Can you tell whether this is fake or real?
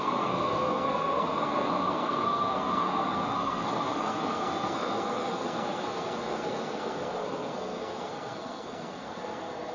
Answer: fake